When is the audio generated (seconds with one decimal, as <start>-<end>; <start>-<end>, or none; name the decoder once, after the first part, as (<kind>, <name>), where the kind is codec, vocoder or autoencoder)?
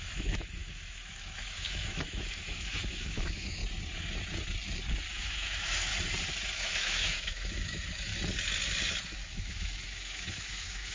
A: 0.0-3.6 (autoencoder, DAC-VAE); 5.1-5.9; 6.5-8.1; 9.3-10.9